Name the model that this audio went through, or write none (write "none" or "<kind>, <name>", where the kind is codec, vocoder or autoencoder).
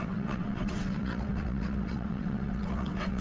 vocoder, WaveNeXt